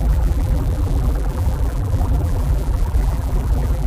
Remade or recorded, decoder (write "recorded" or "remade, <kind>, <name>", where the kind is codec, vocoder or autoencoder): remade, vocoder, BigVGAN v2